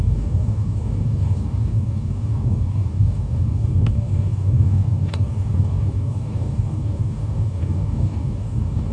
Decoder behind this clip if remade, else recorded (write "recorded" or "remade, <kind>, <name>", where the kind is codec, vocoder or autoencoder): remade, codec, DAC